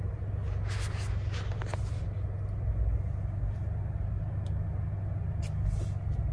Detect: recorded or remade recorded